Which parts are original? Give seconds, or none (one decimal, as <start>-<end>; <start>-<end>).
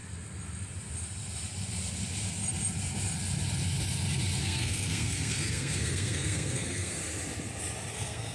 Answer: 0.0-4.4; 7.0-7.9